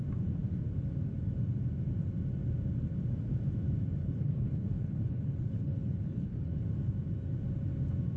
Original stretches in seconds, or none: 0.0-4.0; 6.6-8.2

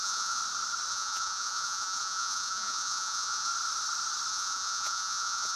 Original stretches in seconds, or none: 0.4-0.9; 3.5-4.3